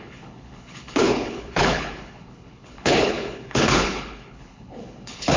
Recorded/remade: remade